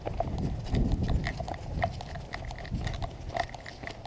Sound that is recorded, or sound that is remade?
recorded